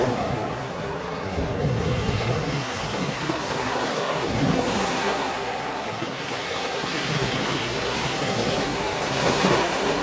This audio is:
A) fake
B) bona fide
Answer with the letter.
A